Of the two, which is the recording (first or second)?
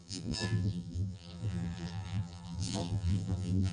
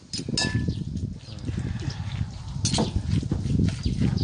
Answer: second